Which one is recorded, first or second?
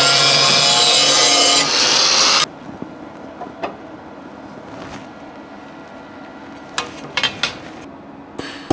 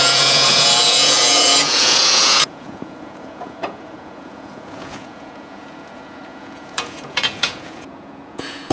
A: first